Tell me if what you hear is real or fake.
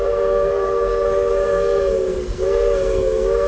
fake